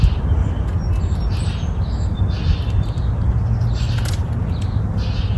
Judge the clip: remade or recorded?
recorded